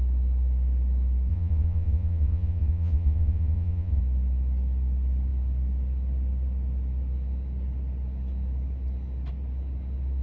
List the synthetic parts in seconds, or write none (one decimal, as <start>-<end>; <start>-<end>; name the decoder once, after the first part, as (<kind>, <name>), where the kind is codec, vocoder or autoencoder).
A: 1.3-4.0 (vocoder, Vocos)